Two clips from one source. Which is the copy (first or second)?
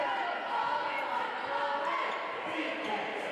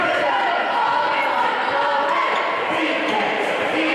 second